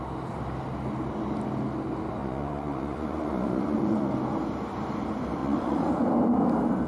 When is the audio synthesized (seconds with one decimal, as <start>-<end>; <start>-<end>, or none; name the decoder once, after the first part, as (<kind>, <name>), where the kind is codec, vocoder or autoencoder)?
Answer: 2.2-4.1 (vocoder, Vocos); 5.4-5.9